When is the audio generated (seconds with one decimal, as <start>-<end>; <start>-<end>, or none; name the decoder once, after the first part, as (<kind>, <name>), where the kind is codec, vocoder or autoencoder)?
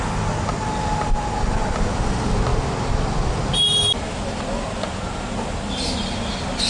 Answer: none